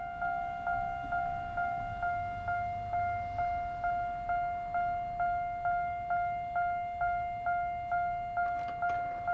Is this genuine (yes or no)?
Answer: yes